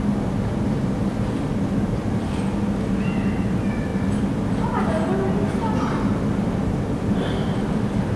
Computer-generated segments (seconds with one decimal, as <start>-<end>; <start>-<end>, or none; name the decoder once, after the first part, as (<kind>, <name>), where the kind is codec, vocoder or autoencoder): none